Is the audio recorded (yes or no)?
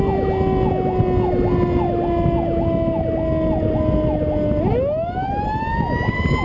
yes